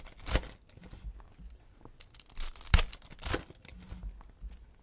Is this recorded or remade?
recorded